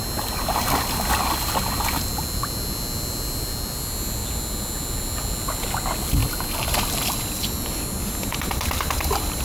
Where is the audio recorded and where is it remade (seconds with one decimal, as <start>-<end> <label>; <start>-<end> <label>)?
0.0-9.4 recorded